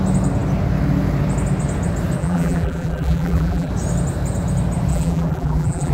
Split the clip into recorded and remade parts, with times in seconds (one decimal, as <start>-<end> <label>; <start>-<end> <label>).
0.0-2.2 recorded; 2.2-3.7 remade; 3.7-4.9 recorded; 4.9-5.9 remade